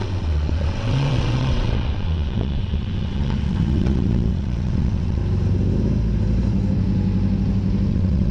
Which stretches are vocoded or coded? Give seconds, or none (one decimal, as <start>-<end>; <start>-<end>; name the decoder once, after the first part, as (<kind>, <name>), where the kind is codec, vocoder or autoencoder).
0.0-5.2 (vocoder, WaveNeXt); 7.9-8.3